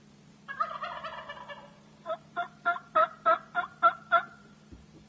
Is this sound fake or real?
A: fake